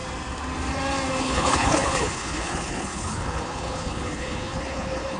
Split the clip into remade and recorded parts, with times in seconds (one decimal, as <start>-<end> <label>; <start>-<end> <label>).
0.0-1.2 recorded; 1.2-5.2 remade